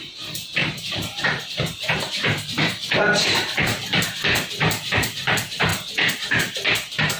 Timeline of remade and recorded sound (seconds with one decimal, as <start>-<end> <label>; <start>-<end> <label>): 0.0-7.2 remade